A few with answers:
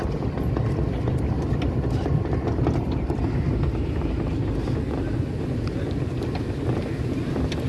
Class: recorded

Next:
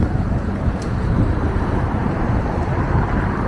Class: remade